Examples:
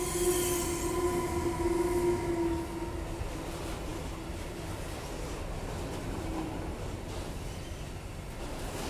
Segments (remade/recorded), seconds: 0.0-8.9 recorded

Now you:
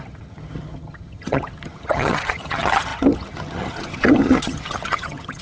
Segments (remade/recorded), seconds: 0.0-5.4 remade